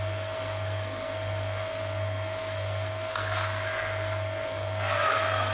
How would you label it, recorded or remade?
remade